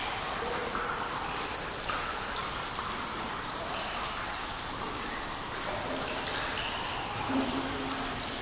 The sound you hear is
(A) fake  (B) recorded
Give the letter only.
B